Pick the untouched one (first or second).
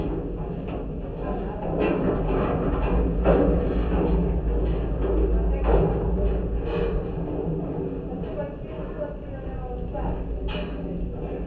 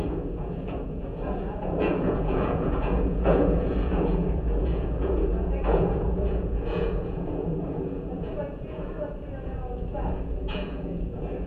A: first